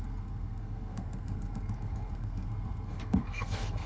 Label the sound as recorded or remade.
remade